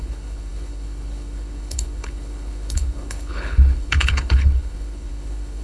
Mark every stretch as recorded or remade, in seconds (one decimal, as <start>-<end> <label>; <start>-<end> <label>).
0.0-5.6 remade